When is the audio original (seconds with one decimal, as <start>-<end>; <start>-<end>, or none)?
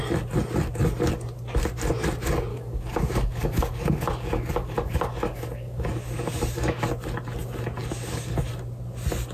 0.0-2.5; 6.9-7.8; 8.5-9.3